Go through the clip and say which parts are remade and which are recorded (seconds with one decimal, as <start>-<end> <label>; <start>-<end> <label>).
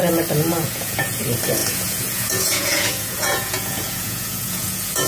0.0-0.5 recorded; 0.5-1.2 remade; 1.2-1.6 recorded; 1.6-5.1 remade